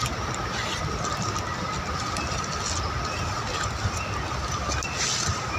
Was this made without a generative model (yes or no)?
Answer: yes